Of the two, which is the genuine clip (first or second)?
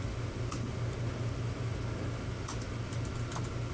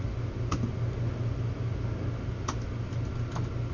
second